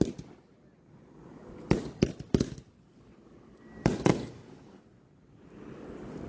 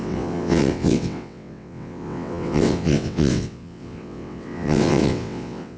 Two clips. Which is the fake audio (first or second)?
second